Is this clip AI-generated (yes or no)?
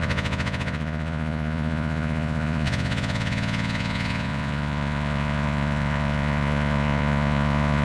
yes